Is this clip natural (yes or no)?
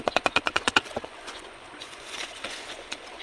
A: no